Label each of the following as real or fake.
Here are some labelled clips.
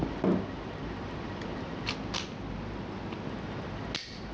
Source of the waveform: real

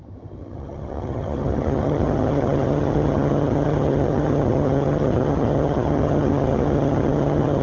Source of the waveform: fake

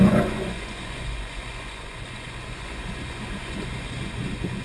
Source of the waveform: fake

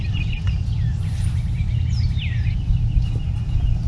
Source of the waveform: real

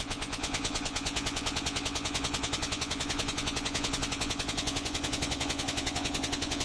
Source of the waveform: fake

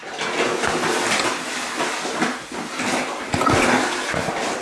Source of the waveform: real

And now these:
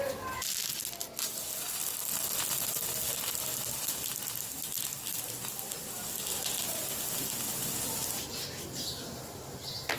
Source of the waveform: real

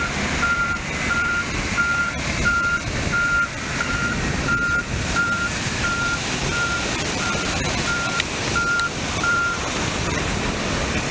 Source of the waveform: fake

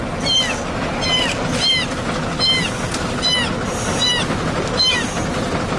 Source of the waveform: real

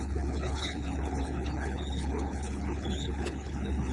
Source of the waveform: fake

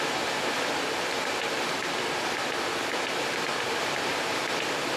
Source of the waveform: real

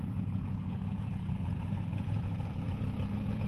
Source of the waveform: fake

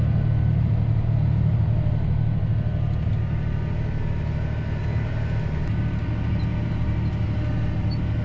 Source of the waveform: real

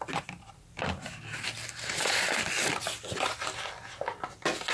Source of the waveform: real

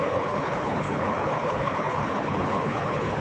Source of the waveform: fake